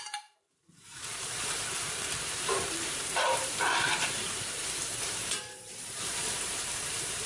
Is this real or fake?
fake